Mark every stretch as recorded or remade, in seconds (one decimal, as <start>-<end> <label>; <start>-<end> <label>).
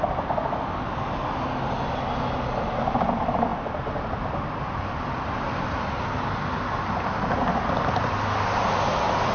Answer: 0.0-9.3 recorded